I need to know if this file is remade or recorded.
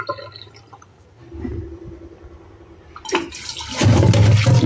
recorded